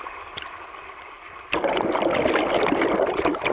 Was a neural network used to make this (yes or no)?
no